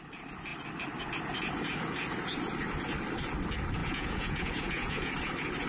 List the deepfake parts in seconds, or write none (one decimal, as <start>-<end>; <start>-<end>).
3.8-5.1